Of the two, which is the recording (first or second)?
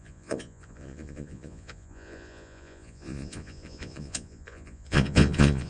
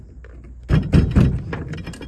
second